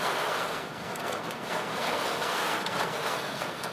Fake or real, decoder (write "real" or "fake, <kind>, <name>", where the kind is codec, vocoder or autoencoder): fake, codec, SNAC